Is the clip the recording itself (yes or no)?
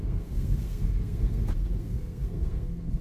no